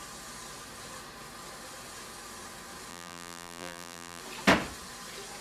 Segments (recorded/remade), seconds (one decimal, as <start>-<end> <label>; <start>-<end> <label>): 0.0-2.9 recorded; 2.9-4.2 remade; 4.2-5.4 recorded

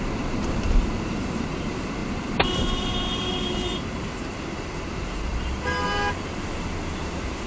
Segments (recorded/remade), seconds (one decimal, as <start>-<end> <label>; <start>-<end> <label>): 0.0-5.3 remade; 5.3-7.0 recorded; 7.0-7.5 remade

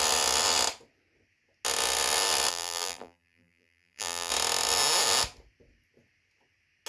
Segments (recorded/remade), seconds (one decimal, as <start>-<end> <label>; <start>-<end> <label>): 0.0-2.5 recorded; 2.5-4.3 remade; 4.3-6.9 recorded

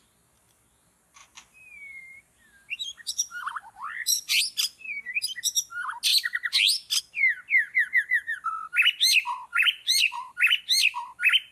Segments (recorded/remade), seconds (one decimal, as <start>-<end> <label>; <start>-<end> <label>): 0.0-1.2 recorded; 1.2-4.4 remade; 4.4-9.5 recorded; 9.5-10.6 remade; 10.6-11.5 recorded

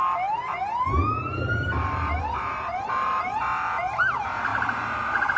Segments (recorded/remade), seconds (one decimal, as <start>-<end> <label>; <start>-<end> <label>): 0.0-1.2 recorded; 1.2-3.3 remade; 3.3-4.5 recorded; 4.5-5.4 remade

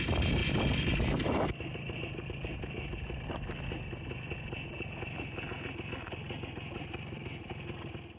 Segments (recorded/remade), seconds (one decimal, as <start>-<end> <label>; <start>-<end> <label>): 0.0-8.2 recorded